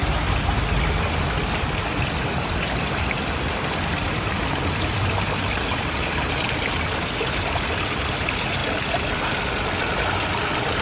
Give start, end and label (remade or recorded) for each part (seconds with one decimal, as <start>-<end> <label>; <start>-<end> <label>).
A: 0.0-10.8 recorded